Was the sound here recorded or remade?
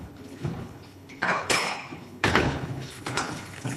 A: remade